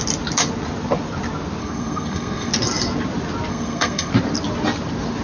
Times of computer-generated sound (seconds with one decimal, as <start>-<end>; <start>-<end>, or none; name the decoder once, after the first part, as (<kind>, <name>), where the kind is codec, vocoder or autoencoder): 1.6-2.5 (codec, SNAC); 3.5-4.1